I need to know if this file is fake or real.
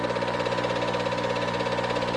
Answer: real